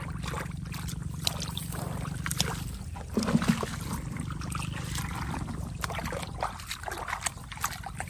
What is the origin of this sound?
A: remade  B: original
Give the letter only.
B